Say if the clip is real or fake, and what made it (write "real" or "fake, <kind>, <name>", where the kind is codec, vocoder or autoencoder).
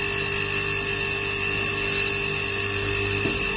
real